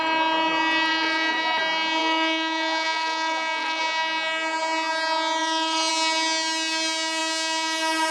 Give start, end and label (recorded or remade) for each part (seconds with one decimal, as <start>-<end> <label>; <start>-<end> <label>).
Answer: 0.0-0.9 recorded; 0.9-1.6 remade; 1.6-2.0 recorded; 2.0-3.8 remade; 3.8-5.4 recorded; 5.4-5.9 remade; 5.9-8.1 recorded